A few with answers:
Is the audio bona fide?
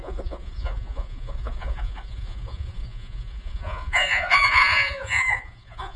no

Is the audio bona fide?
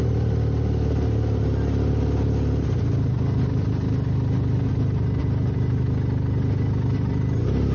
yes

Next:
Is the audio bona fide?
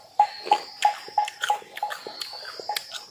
yes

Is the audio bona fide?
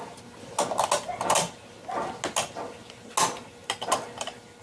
yes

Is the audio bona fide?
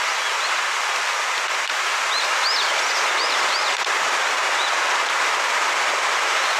yes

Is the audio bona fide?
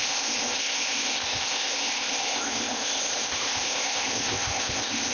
no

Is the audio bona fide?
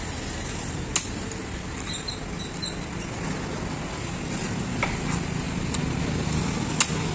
yes